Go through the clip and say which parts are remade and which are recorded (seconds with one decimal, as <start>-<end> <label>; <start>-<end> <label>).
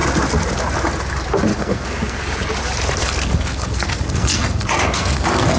0.0-1.5 recorded; 1.5-2.2 remade; 2.2-3.0 recorded; 3.0-5.6 remade